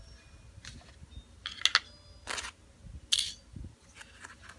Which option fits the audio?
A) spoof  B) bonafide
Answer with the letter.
B